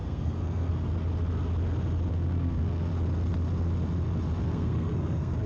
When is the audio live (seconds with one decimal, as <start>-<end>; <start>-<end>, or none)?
0.7-2.1; 2.9-4.4